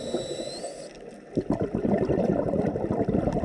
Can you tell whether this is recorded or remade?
remade